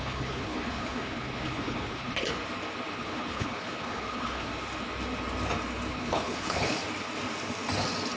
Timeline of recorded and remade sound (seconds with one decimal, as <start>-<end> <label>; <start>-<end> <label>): 0.0-2.4 remade; 2.4-2.9 recorded; 2.9-4.5 remade; 4.5-5.9 recorded; 5.9-6.8 remade; 6.8-8.2 recorded